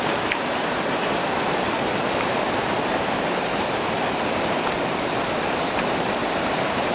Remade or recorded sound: remade